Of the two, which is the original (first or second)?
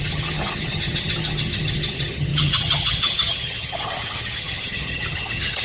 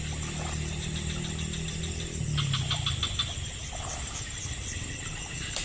second